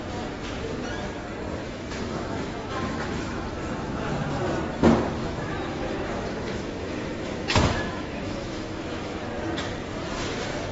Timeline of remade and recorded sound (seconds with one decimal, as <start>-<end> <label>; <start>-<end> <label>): 0.0-1.6 recorded; 1.6-4.1 remade; 4.1-5.2 recorded; 5.2-9.2 remade; 9.2-10.7 recorded